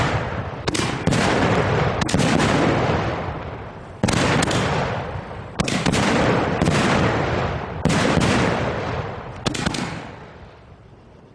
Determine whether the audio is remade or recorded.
recorded